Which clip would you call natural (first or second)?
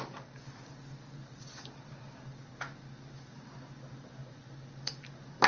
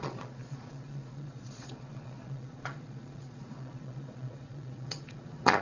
first